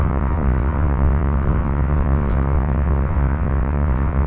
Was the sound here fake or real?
fake